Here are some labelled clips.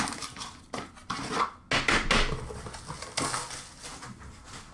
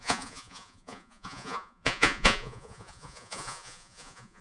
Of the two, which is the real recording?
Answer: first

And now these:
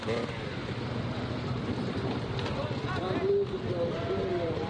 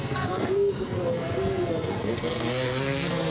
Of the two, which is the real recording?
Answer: first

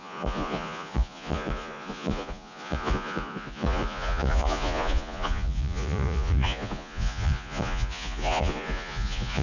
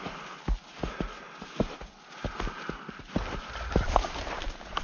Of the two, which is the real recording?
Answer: second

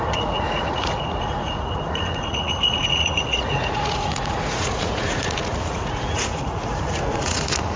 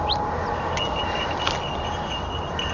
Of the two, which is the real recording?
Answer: second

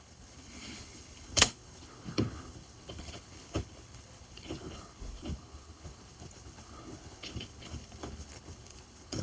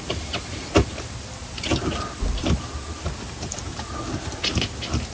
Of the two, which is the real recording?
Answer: second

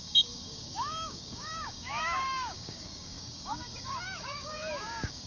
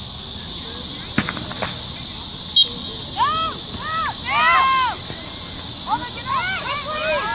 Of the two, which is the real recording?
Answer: second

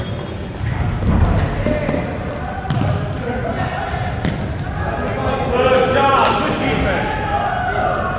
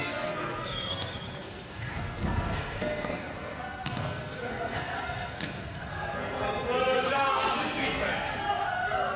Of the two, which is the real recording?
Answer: first